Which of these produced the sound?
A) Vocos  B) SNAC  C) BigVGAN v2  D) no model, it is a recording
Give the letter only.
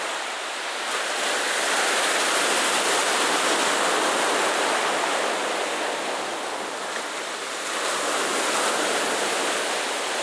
D